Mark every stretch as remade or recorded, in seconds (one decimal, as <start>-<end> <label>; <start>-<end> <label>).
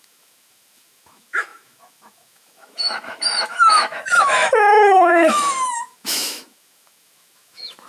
0.0-7.9 remade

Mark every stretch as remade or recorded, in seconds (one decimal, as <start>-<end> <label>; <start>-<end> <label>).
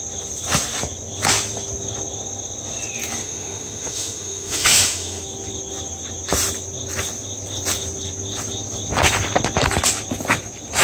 0.0-3.2 recorded; 3.2-5.2 remade; 5.2-10.8 recorded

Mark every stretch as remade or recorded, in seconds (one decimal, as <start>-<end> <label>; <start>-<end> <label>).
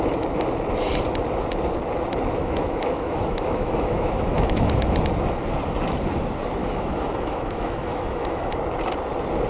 0.0-2.4 recorded; 2.4-5.0 remade; 5.0-6.6 recorded; 6.6-8.5 remade; 8.5-9.5 recorded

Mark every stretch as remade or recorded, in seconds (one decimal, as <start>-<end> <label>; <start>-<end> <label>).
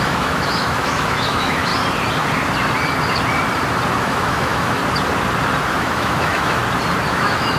0.0-1.7 remade; 1.7-4.0 recorded; 4.0-4.8 remade; 4.8-5.8 recorded; 5.8-6.6 remade; 6.6-7.1 recorded; 7.1-7.6 remade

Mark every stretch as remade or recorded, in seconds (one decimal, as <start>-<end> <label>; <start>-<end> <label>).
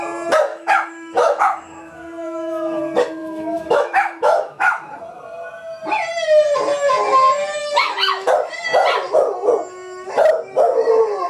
0.0-0.5 recorded; 0.5-2.8 remade; 2.8-3.2 recorded; 3.2-4.9 remade; 4.9-7.6 recorded; 7.6-8.3 remade; 8.3-11.3 recorded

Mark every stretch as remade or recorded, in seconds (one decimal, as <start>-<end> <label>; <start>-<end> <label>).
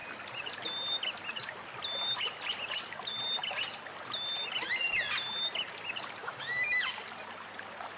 0.0-6.2 recorded; 6.2-6.9 remade; 6.9-8.0 recorded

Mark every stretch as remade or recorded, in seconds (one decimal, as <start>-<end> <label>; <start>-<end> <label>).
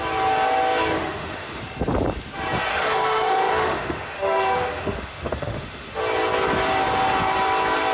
0.0-1.0 recorded; 1.0-1.6 remade; 1.6-2.7 recorded; 2.7-6.0 remade; 6.0-7.9 recorded